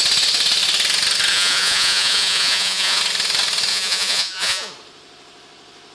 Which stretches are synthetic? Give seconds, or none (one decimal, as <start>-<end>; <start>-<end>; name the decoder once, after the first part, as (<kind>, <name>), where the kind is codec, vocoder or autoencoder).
1.3-3.0 (vocoder, Vocos); 3.7-4.7